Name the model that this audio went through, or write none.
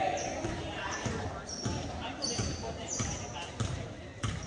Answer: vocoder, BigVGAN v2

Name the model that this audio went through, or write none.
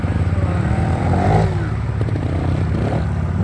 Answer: none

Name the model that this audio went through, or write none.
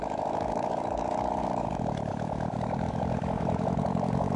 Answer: codec, DAC